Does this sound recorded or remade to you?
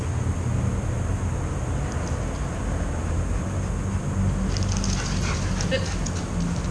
recorded